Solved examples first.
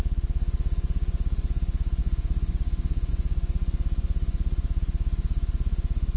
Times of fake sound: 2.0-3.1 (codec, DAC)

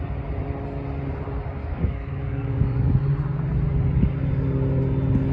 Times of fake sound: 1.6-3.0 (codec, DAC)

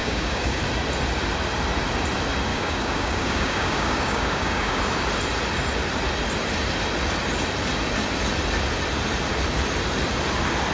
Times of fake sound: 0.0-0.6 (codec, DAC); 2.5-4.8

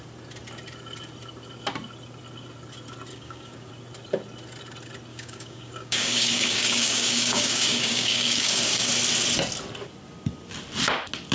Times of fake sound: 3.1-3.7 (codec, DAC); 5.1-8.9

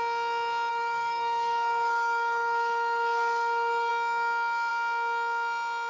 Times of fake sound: 0.7-3.9 (codec, DAC)

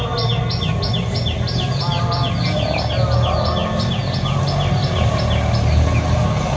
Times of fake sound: none

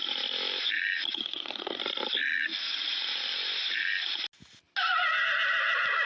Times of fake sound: 1.2-1.8 (codec, DAC)